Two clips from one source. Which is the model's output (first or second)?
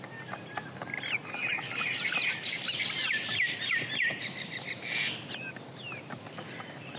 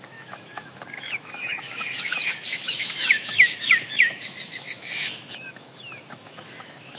second